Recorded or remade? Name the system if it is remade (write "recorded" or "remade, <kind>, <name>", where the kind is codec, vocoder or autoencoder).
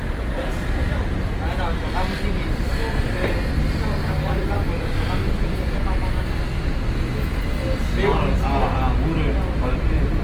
recorded